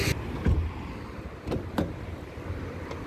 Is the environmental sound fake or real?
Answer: real